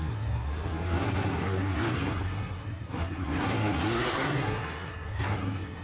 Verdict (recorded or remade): remade